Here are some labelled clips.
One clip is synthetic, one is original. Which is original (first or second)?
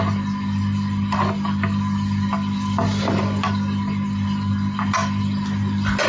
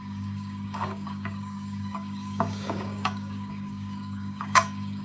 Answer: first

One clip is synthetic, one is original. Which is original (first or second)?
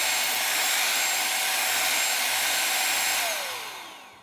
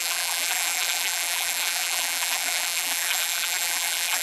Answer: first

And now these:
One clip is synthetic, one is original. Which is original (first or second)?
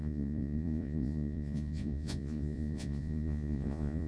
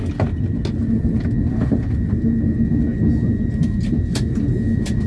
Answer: second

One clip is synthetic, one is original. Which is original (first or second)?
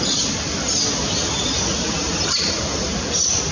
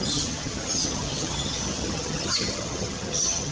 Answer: first